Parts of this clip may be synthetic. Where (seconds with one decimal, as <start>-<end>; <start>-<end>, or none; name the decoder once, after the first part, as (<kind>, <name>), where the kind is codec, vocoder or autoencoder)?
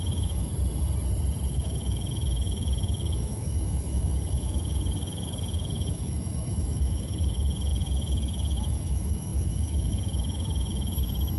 0.0-0.5 (autoencoder, DAC-VAE); 1.5-11.4